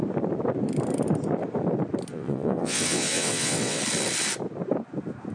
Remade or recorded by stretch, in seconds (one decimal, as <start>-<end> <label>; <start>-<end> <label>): 0.0-2.1 recorded; 2.1-3.8 remade; 3.8-5.3 recorded